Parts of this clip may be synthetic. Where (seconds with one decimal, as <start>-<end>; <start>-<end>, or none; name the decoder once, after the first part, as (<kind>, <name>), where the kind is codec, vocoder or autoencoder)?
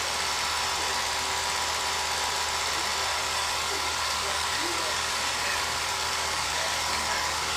3.1-7.6 (codec, DAC)